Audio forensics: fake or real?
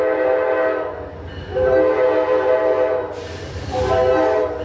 real